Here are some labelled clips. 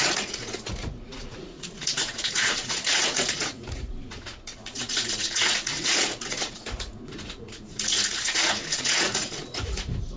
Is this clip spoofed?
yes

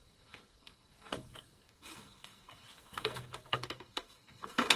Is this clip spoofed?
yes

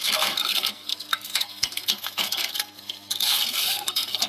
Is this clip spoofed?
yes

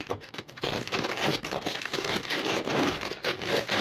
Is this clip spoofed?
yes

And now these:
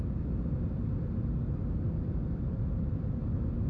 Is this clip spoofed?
yes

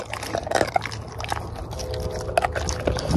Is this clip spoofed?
no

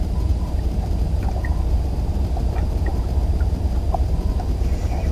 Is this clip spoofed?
yes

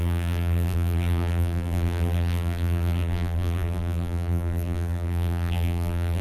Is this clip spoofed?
yes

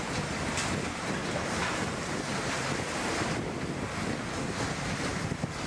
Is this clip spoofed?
no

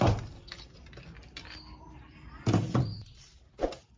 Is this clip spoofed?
no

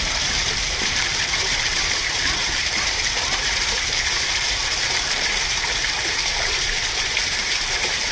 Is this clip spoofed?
yes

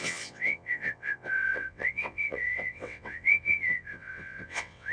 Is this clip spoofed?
yes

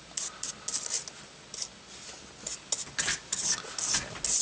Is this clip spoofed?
no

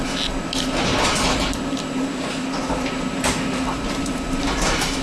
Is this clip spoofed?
yes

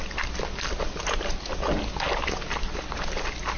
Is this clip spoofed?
no